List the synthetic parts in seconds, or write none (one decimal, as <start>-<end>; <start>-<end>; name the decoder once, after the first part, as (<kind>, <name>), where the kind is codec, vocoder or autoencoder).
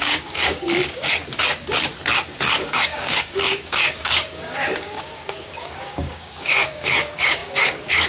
0.0-1.2 (codec, DAC); 2.6-8.1